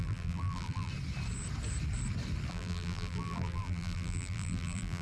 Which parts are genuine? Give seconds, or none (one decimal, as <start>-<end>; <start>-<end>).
0.9-2.5